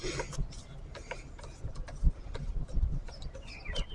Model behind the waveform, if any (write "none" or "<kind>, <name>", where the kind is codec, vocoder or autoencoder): none